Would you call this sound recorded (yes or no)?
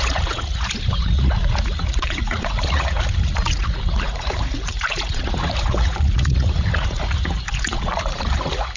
no